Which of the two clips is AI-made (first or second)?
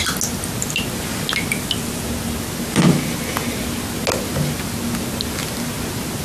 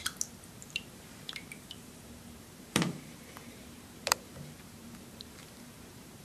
second